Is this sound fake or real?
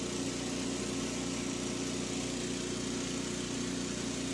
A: real